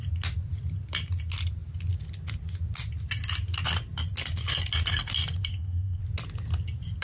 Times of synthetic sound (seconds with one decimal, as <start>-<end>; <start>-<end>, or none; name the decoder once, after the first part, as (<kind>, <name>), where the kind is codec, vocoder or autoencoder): 5.5-6.0 (codec, SNAC)